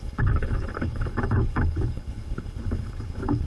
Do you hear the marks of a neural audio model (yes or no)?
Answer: yes